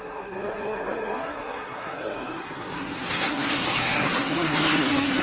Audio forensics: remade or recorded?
remade